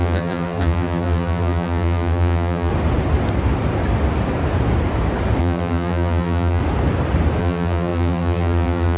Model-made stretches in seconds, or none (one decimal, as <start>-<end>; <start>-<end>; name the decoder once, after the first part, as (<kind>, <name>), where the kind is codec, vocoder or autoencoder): 0.0-2.7 (vocoder, BigVGAN v2); 5.4-6.6; 7.4-9.0